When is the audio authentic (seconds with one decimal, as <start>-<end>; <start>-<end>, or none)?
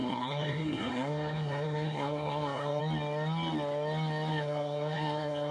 2.8-4.3